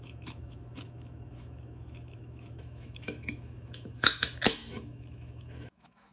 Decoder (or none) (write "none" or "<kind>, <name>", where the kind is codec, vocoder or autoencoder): autoencoder, DAC-VAE